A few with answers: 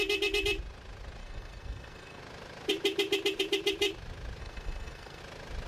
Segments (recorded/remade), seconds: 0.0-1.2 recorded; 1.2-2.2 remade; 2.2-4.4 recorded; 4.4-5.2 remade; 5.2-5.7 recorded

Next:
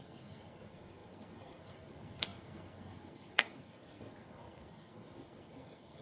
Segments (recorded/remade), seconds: 0.0-6.0 remade

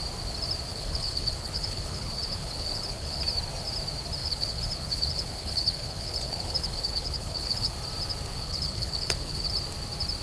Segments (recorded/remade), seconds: 0.0-0.7 recorded; 0.7-3.2 remade; 3.2-4.2 recorded; 4.2-7.7 remade; 7.7-8.3 recorded; 8.3-9.5 remade; 9.5-10.2 recorded

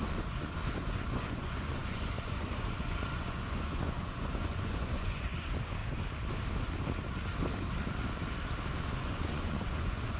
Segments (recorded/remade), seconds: 0.0-5.8 remade; 5.8-8.8 recorded; 8.8-10.2 remade

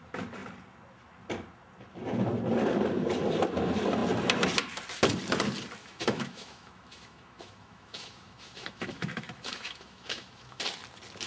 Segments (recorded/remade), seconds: 0.0-5.8 recorded; 5.8-10.6 remade; 10.6-11.3 recorded

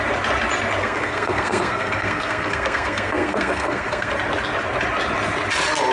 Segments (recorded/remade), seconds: 0.0-0.8 recorded; 0.8-4.1 remade; 4.1-5.9 recorded

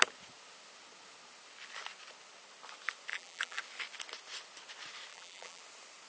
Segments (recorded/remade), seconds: 0.0-3.1 recorded; 3.1-3.6 remade; 3.6-5.1 recorded; 5.1-5.6 remade; 5.6-6.1 recorded